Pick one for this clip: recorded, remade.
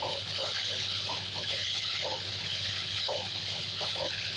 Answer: remade